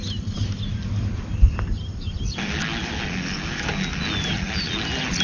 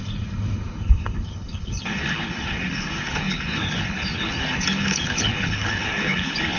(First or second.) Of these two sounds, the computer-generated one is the second